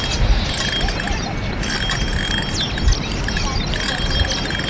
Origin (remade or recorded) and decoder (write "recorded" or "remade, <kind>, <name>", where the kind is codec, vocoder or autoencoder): recorded